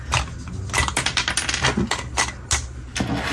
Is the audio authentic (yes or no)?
yes